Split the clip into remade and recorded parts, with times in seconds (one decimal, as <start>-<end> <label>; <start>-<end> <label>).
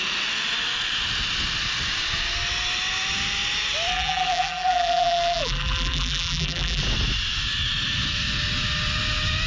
0.0-3.9 recorded; 3.9-6.8 remade; 6.8-9.5 recorded